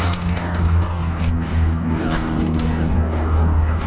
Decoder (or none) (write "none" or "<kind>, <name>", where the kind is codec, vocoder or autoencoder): codec, DAC